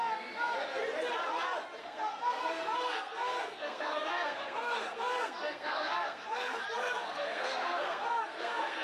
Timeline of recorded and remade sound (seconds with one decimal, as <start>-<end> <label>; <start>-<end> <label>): 0.0-0.8 remade; 0.8-1.8 recorded; 1.8-8.8 remade